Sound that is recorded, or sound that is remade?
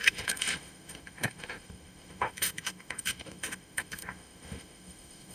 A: remade